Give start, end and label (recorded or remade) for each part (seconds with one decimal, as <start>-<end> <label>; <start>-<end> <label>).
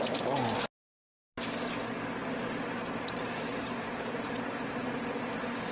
0.0-2.2 recorded; 2.2-5.0 remade; 5.0-5.7 recorded